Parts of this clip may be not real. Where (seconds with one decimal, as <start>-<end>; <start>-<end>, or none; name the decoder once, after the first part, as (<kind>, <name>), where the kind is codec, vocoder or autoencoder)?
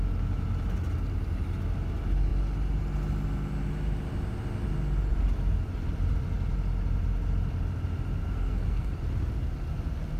8.2-8.9 (codec, SNAC)